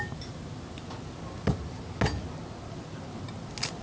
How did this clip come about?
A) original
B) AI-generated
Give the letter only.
A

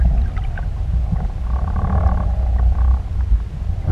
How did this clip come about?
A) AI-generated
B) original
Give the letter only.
B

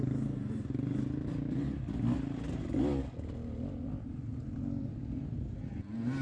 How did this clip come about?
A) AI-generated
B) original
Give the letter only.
B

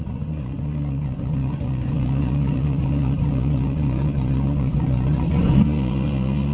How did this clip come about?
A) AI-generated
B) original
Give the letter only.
A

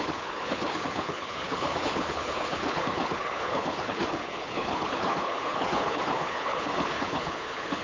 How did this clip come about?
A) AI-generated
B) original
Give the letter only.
A